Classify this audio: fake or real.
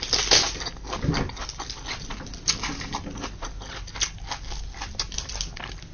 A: real